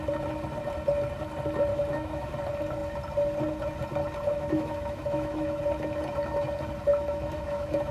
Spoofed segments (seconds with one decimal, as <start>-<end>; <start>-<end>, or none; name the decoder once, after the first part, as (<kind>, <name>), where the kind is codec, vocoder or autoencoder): 1.7-2.3 (autoencoder, DAC-VAE); 4.3-5.6; 6.9-7.9